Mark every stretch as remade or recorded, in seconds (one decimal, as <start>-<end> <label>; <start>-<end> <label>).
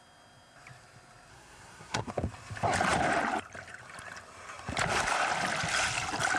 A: 0.0-1.3 recorded; 1.3-2.1 remade; 2.1-6.4 recorded